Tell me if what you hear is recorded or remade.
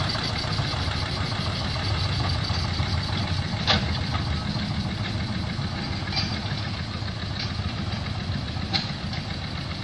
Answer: recorded